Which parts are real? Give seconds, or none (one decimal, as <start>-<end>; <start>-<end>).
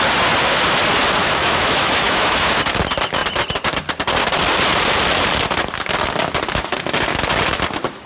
0.0-1.2; 2.6-8.1